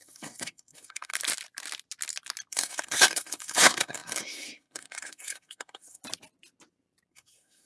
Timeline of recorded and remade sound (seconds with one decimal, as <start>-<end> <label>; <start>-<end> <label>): 0.0-1.1 remade; 1.1-2.5 recorded; 2.5-6.0 remade; 6.0-7.1 recorded; 7.1-7.7 remade